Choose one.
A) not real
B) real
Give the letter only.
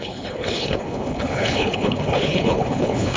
A